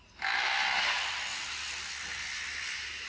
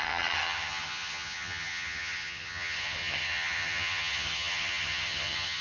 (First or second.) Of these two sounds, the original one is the first